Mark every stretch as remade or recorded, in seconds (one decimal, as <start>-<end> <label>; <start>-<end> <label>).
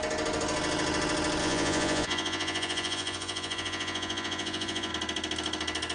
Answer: 0.0-1.4 recorded; 1.4-4.9 remade; 4.9-5.9 recorded